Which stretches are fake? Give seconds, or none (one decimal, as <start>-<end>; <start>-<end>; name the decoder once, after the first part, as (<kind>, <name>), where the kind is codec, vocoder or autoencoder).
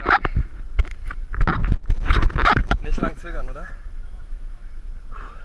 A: 1.8-3.7 (autoencoder, DAC-VAE)